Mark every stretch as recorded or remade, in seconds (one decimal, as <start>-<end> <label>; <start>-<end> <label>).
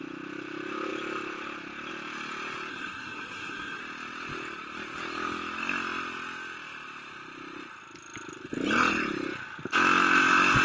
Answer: 0.0-2.7 recorded; 2.7-3.8 remade; 3.8-10.6 recorded